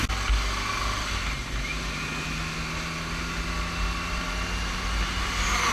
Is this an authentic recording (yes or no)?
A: yes